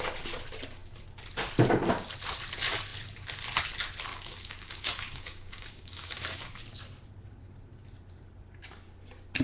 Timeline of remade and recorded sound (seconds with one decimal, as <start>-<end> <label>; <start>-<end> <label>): 0.0-4.1 recorded; 4.1-6.4 remade; 6.4-9.4 recorded